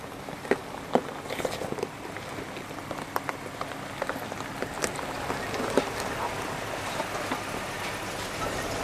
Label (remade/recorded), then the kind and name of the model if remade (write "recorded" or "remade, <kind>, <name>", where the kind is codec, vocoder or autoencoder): recorded